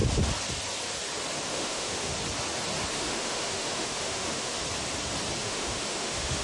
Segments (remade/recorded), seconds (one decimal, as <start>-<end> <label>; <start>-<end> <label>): 0.0-1.5 recorded; 1.5-2.1 remade; 2.1-2.9 recorded; 2.9-4.6 remade; 4.6-5.4 recorded; 5.4-6.4 remade